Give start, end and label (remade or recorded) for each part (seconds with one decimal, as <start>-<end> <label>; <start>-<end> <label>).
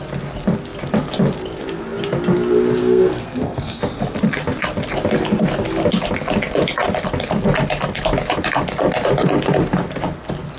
0.0-2.8 recorded; 2.8-3.8 remade; 3.8-10.6 recorded